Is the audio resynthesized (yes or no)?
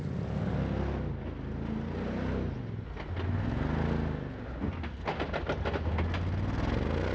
no